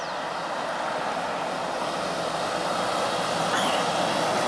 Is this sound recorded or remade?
recorded